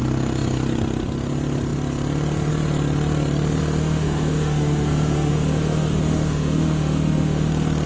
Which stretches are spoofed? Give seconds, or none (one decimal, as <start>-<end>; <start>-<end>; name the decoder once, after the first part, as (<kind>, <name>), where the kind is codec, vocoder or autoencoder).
3.8-7.5 (autoencoder, DAC-VAE)